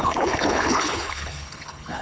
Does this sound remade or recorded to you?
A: remade